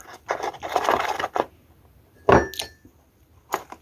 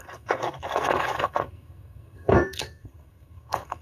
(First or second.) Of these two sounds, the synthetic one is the second